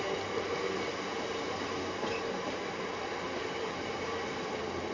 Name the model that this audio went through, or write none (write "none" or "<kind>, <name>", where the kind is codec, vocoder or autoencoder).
none